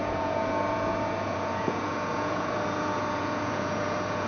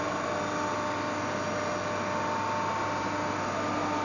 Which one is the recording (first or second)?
second